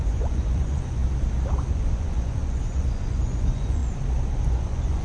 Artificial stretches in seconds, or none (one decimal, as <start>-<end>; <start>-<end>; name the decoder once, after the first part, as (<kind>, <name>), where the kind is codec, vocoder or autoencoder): 0.0-1.0 (vocoder, Vocos); 1.7-3.8; 4.4-5.0